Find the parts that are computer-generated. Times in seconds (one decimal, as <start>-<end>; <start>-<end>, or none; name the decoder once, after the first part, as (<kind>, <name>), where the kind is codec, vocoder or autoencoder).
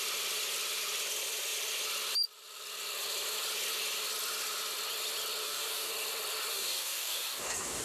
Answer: 5.4-5.9 (codec, DAC); 6.5-7.8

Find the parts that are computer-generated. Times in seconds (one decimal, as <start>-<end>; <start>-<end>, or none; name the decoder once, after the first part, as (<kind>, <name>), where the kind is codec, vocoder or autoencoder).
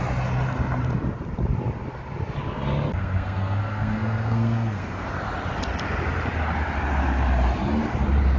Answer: 2.9-5.1 (codec, SNAC)